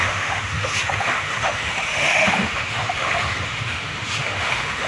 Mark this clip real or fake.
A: fake